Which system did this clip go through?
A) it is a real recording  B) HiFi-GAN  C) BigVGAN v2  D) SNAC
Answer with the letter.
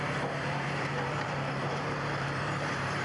C